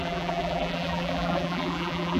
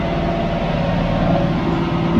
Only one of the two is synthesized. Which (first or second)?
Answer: first